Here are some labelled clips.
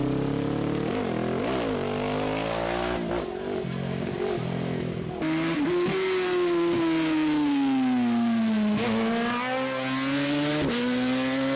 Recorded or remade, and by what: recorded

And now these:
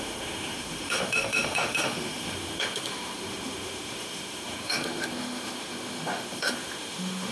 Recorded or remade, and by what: remade, autoencoder, DAC-VAE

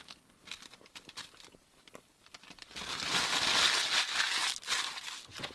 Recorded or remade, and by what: recorded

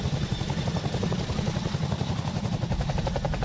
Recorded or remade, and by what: recorded